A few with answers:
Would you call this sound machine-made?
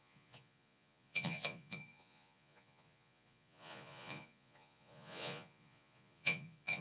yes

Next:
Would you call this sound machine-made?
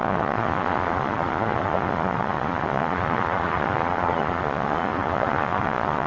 yes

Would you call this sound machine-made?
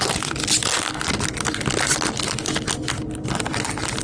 no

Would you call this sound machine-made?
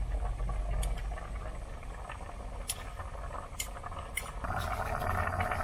no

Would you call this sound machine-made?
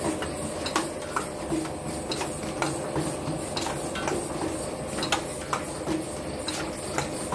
no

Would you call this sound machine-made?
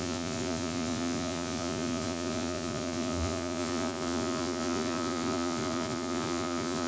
yes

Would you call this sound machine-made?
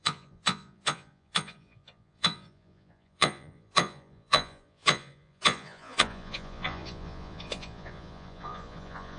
yes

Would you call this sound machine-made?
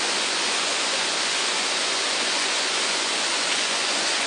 yes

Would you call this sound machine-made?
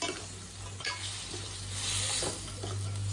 no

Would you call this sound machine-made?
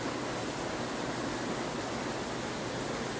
no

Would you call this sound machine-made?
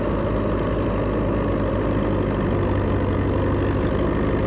no